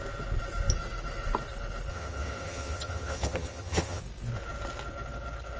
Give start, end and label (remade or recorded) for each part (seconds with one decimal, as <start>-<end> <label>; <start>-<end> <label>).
0.0-1.9 recorded; 1.9-4.0 remade; 4.0-5.6 recorded